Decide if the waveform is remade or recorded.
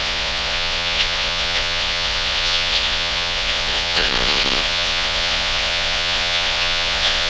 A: remade